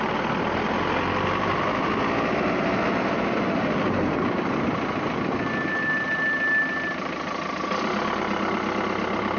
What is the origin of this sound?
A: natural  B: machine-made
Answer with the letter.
A